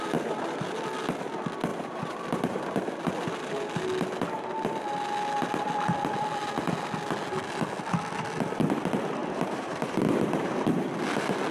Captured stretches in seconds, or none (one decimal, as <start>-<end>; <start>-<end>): 0.0-1.7; 2.6-9.2; 10.6-11.5